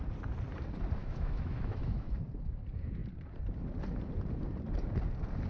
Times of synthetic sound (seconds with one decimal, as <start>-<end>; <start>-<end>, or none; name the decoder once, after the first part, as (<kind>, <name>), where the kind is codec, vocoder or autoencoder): 1.0-2.2 (autoencoder, DAC-VAE)